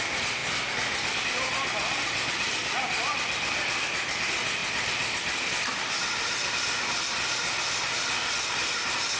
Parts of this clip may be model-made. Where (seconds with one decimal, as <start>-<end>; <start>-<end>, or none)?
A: 2.6-3.5; 4.6-6.5

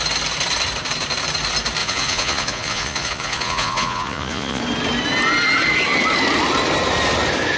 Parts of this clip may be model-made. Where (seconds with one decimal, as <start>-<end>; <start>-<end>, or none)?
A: 1.8-4.6

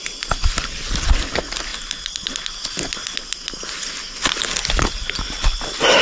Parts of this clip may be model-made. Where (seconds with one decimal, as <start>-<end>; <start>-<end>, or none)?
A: none

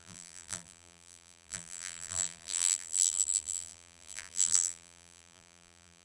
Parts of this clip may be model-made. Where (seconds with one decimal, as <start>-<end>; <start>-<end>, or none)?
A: 0.0-6.0

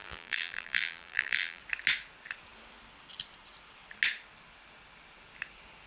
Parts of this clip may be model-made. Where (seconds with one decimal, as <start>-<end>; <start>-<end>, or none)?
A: 0.0-1.6